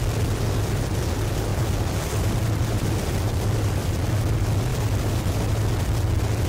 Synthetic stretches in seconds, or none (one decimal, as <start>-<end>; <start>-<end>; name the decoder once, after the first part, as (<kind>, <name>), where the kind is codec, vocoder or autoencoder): 1.5-4.1 (vocoder, BigVGAN v2); 4.7-5.5